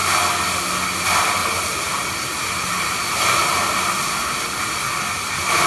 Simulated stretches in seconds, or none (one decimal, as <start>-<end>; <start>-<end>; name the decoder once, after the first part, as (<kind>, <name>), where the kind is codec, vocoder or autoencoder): 1.4-4.8 (vocoder, BigVGAN v2)